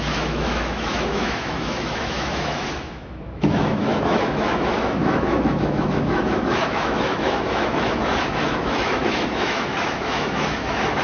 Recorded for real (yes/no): no